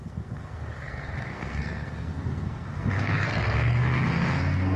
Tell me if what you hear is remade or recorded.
remade